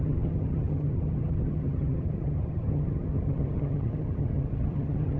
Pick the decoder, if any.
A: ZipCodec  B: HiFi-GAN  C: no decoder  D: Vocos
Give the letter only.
B